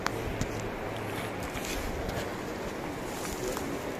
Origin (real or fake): real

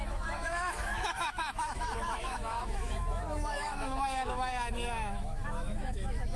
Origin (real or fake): fake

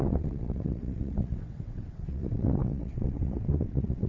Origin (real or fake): fake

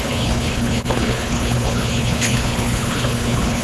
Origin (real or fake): fake